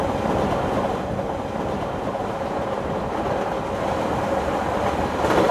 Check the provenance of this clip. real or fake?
real